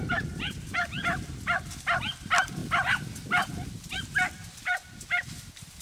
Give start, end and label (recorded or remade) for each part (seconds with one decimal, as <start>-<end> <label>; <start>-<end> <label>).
0.0-2.6 remade; 2.6-3.5 recorded; 3.5-5.8 remade